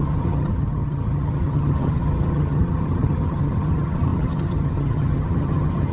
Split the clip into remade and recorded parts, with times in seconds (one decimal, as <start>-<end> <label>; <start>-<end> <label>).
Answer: 0.0-5.9 remade